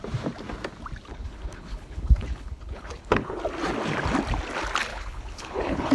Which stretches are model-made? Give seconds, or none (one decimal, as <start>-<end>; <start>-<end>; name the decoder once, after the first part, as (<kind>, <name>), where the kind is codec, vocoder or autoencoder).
1.1-3.4 (codec, HILCodec); 4.9-5.9